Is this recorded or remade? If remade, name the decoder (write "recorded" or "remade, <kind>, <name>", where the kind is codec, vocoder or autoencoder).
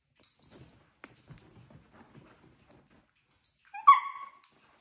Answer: recorded